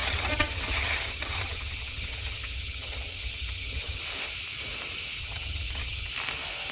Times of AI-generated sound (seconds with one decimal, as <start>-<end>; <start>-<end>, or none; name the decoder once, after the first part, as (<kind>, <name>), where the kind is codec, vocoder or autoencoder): 0.0-4.0 (vocoder, HiFi-GAN); 5.2-6.1